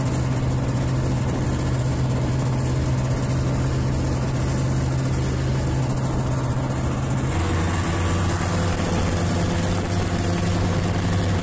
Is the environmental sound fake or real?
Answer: real